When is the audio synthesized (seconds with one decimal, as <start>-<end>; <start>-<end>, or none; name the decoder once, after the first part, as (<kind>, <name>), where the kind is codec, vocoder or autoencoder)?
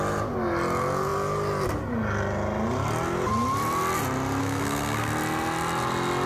4.4-5.1 (codec, SNAC)